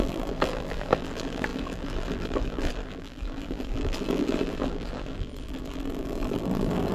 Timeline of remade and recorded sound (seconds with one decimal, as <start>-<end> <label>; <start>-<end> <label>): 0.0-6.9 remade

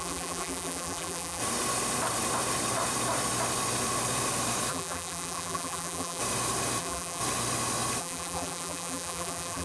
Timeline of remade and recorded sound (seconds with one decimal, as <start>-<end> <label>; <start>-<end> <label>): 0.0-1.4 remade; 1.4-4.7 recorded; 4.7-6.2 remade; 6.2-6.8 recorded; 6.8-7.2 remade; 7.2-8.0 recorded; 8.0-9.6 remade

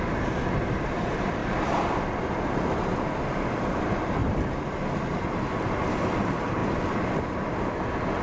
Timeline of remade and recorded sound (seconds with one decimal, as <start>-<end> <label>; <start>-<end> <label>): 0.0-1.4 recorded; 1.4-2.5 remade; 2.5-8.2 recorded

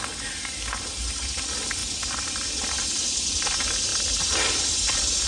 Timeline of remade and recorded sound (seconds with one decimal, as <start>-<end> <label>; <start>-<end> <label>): 0.0-5.3 recorded